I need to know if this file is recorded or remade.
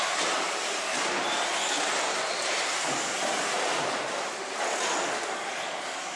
recorded